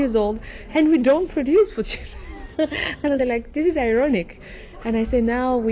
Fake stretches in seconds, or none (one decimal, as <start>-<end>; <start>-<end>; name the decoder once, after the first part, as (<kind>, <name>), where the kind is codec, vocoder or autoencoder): 2.5-3.2 (vocoder, HiFi-GAN)